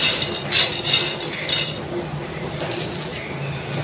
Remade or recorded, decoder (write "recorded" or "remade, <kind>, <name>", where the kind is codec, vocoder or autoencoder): recorded